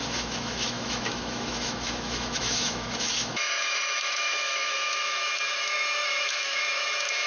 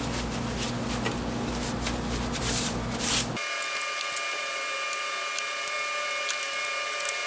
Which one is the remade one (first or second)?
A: first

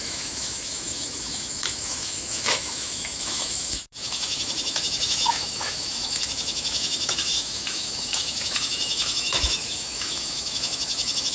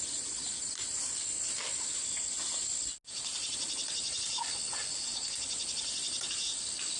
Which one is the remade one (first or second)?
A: first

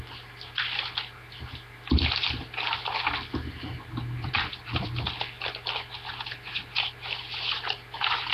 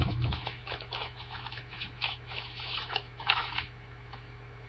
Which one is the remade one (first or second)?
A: second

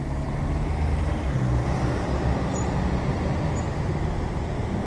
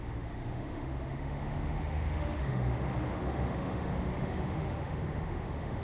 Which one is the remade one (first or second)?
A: second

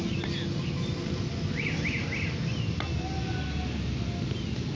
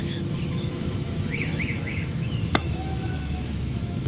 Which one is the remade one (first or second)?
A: second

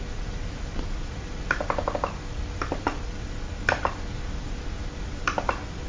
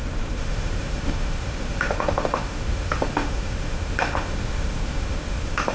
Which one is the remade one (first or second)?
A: second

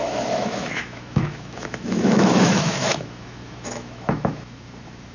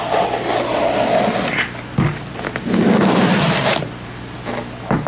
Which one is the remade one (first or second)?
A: first